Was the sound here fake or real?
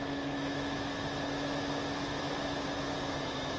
fake